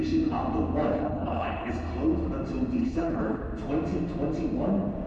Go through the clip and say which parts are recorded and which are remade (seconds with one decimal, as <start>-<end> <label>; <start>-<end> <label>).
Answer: 0.0-0.9 recorded; 0.9-1.7 remade; 1.7-2.8 recorded; 2.8-3.4 remade; 3.4-5.1 recorded

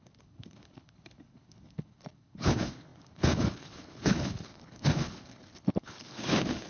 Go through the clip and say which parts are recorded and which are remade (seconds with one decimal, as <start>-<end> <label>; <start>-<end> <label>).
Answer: 0.0-6.7 remade

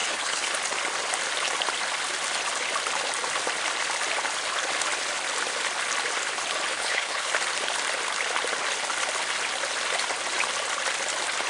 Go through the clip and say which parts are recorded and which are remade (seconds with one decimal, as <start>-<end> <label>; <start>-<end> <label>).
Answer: 0.0-0.5 remade; 0.5-6.7 recorded; 6.7-7.3 remade; 7.3-11.5 recorded

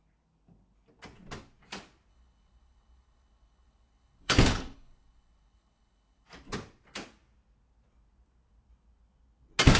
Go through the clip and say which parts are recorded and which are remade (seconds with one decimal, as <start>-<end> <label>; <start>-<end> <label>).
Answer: 0.0-2.1 recorded; 2.1-6.3 remade; 6.3-9.8 recorded

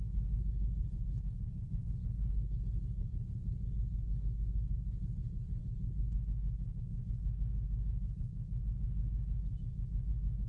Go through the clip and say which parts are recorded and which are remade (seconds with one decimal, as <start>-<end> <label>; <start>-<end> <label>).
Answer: 0.0-9.5 remade; 9.5-10.1 recorded; 10.1-10.5 remade